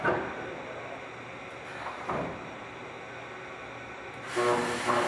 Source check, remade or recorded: recorded